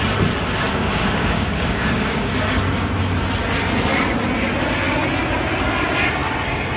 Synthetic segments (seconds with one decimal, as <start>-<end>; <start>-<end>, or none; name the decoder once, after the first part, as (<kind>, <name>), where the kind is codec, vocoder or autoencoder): 0.7-2.3 (codec, DAC)